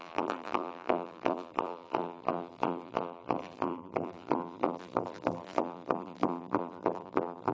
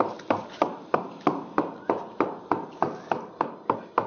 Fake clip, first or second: first